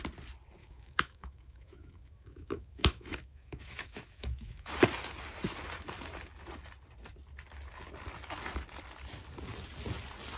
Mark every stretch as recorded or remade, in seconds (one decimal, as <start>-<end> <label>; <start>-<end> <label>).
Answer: 0.0-0.6 recorded; 0.6-4.7 remade; 4.7-10.4 recorded